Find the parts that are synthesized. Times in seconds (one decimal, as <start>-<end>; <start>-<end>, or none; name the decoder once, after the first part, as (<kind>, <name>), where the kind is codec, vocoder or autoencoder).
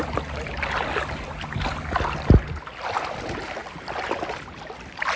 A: none